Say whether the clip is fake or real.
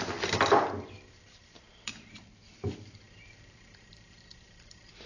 fake